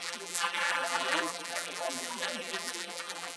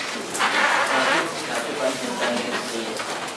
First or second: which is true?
second